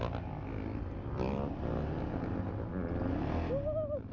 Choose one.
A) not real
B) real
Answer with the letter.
B